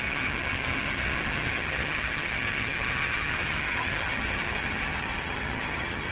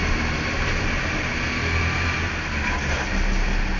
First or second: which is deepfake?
first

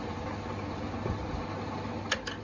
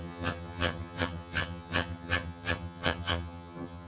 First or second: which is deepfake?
second